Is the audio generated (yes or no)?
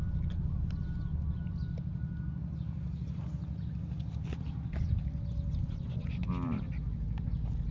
no